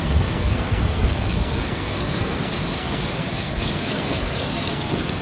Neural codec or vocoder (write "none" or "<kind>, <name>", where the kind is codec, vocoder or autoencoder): codec, SNAC